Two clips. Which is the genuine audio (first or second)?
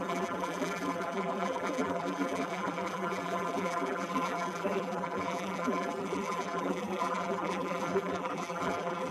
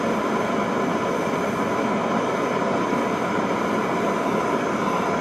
second